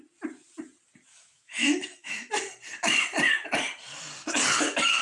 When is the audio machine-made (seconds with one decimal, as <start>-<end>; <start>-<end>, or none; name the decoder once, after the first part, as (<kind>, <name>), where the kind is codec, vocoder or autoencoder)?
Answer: 1.1-2.3 (autoencoder, DAC-VAE)